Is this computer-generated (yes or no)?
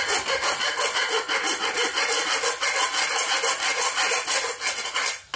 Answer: no